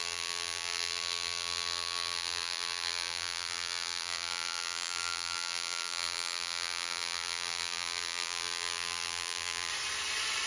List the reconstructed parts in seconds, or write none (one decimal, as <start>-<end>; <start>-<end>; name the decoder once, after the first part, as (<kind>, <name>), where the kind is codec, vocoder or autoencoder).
0.0-9.7 (vocoder, BigVGAN v2)